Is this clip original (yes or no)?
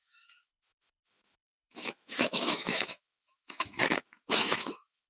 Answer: no